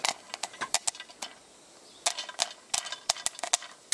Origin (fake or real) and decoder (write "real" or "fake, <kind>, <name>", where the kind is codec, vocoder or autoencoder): real